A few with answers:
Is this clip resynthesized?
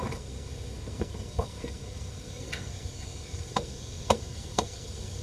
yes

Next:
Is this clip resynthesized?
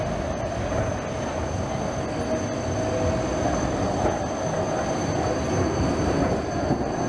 no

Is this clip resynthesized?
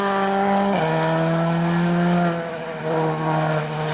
no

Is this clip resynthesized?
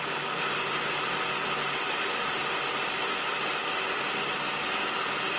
no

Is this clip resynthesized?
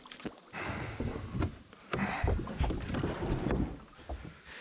no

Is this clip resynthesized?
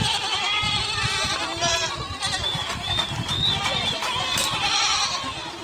no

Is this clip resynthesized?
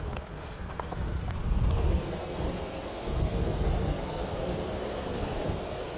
yes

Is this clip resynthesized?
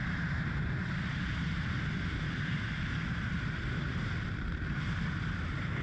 yes